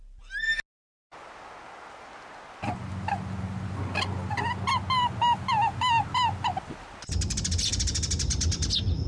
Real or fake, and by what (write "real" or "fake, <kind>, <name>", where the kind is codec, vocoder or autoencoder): real